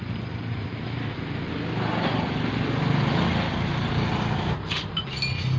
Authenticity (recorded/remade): recorded